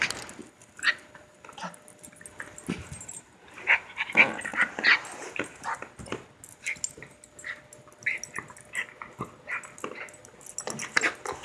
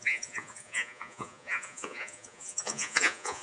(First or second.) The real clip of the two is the first